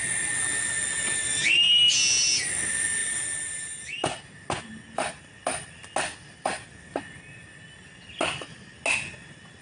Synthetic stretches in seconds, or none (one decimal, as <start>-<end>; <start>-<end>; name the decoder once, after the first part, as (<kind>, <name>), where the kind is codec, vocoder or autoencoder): none